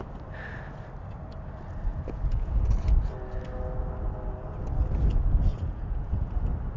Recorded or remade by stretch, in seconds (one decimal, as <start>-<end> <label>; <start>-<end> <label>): 0.0-1.9 recorded; 1.9-2.7 remade; 2.7-5.5 recorded; 5.5-6.3 remade; 6.3-6.8 recorded